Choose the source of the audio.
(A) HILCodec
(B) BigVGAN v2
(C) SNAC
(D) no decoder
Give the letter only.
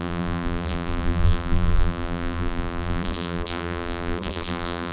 B